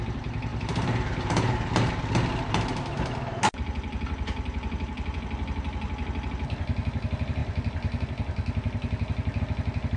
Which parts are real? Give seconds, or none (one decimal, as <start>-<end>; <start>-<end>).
0.0-0.5; 1.9-10.0